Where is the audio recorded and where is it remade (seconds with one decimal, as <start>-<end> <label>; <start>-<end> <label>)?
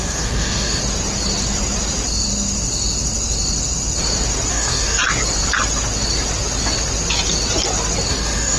0.0-0.8 remade; 0.8-4.5 recorded; 4.5-5.0 remade; 5.0-8.1 recorded; 8.1-8.6 remade